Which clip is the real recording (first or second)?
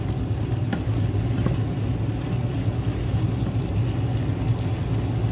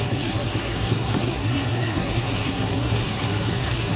first